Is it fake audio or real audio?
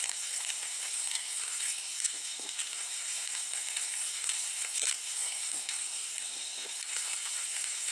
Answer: fake